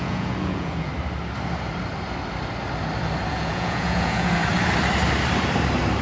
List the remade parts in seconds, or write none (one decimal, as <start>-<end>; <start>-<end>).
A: 0.0-0.9; 3.3-4.4